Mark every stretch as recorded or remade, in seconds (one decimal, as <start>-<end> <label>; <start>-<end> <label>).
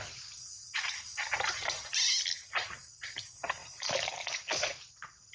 0.0-3.6 recorded; 3.6-5.3 remade